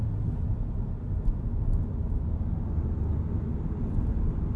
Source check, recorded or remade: recorded